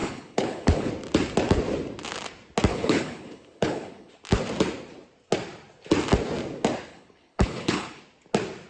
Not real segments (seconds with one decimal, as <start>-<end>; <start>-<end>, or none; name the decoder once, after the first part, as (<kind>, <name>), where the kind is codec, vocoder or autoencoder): 0.0-0.9 (codec, HILCodec); 2.7-4.1; 6.9-8.0